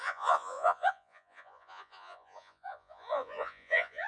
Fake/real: fake